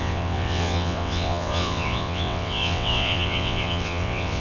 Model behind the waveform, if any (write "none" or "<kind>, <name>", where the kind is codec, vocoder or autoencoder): vocoder, WaveNeXt